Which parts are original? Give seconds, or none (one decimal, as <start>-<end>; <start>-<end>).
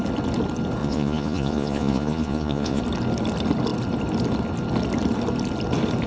0.0-0.8; 2.8-6.1